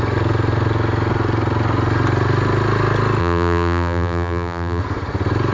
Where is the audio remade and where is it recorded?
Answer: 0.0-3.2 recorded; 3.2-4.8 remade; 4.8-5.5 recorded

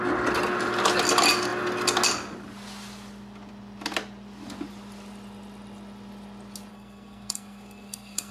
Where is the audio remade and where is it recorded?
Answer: 0.0-6.7 recorded; 6.7-8.3 remade

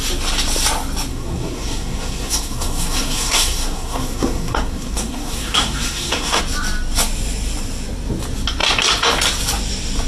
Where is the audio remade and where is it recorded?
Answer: 0.0-1.1 recorded; 1.1-6.4 remade; 6.4-10.1 recorded

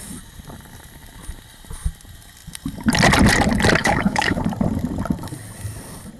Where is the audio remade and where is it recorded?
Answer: 0.0-3.8 recorded; 3.8-4.4 remade; 4.4-6.2 recorded